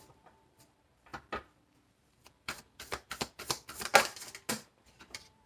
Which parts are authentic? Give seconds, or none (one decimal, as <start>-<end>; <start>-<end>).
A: 1.1-1.9; 3.9-4.5